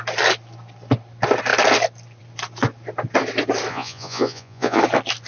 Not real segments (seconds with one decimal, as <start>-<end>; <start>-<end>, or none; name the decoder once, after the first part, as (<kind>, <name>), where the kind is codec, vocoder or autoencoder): 3.7-4.8 (vocoder, Vocos)